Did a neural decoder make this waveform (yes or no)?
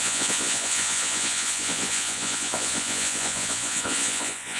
yes